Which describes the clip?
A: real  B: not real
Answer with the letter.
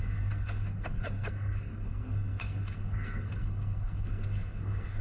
B